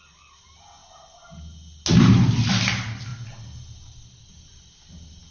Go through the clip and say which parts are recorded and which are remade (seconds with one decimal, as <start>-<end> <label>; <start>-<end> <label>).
0.0-5.3 recorded